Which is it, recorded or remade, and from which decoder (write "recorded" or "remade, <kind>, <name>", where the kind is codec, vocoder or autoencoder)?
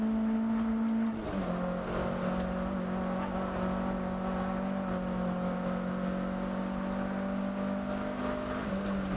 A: recorded